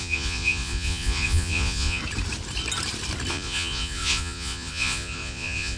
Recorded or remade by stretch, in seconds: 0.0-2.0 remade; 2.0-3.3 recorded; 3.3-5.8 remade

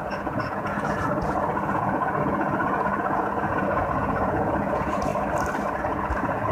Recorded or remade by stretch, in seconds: 0.0-5.1 remade; 5.1-5.8 recorded; 5.8-6.5 remade

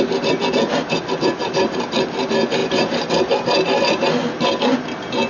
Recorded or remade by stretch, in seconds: 0.0-5.3 recorded

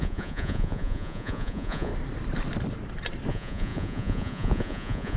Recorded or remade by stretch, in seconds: 0.0-1.9 remade; 1.9-3.3 recorded; 3.3-5.2 remade

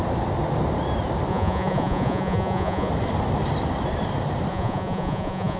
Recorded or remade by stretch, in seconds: 0.0-1.3 recorded; 1.3-2.9 remade; 2.9-4.5 recorded; 4.5-5.6 remade